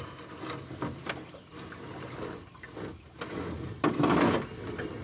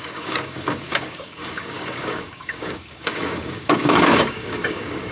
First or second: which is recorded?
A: first